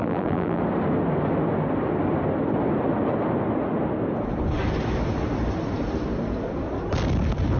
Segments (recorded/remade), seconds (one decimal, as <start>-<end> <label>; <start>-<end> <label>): 0.0-0.6 remade; 0.6-7.6 recorded